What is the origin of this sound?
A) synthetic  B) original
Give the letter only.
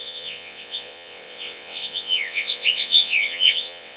A